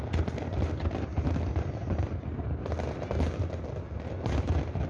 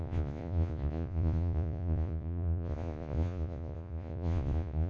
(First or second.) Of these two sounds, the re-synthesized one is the second